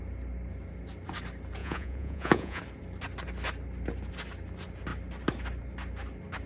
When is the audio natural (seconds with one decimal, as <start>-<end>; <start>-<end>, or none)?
0.0-1.6; 2.6-6.5